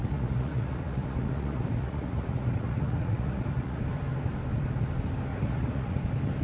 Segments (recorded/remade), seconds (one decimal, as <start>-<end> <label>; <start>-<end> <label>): 0.0-3.8 remade; 3.8-5.3 recorded; 5.3-6.0 remade; 6.0-6.4 recorded